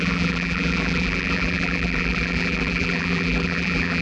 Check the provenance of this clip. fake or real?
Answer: fake